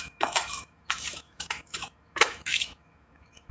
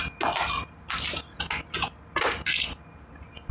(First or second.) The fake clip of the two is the first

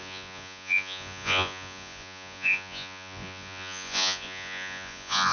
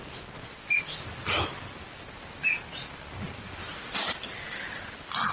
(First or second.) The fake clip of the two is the first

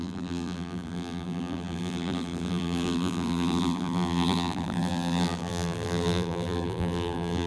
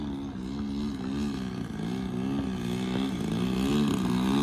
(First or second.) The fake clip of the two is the first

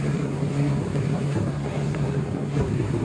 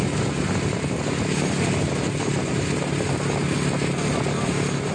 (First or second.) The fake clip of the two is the first